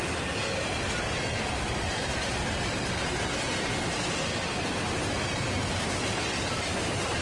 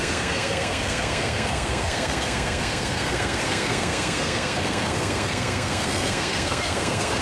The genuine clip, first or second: first